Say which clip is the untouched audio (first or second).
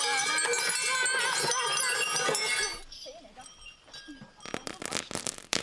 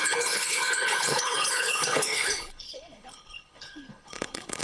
first